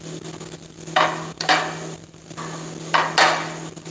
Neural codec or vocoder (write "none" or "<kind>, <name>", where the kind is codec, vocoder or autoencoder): none